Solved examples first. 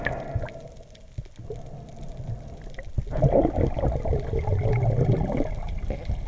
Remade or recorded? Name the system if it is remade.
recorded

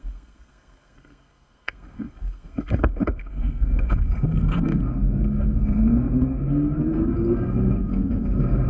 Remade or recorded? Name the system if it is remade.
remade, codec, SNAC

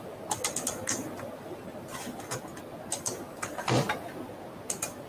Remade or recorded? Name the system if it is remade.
recorded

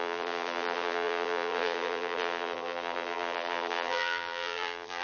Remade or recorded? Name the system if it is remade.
remade, vocoder, BigVGAN v2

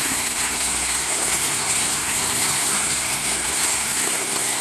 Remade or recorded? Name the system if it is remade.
remade, codec, SNAC